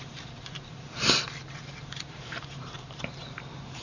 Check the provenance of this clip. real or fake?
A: fake